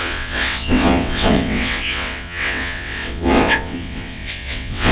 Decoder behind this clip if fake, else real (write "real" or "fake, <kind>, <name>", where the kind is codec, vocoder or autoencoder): fake, vocoder, WaveNeXt